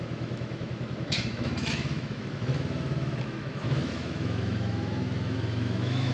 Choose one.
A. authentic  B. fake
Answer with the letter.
B